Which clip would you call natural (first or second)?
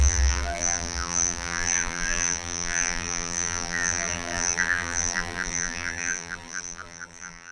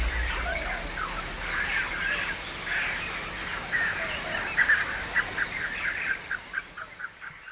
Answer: second